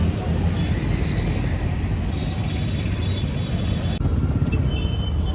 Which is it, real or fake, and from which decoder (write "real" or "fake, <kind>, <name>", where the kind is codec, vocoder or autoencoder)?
real